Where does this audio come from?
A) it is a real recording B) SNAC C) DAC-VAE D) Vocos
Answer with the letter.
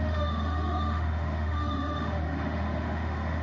C